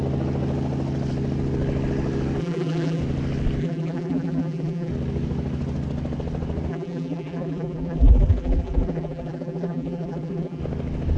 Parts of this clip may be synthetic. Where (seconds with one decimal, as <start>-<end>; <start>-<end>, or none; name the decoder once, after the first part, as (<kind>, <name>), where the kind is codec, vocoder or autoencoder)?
2.4-3.0 (vocoder, BigVGAN v2); 3.6-4.9; 6.7-10.6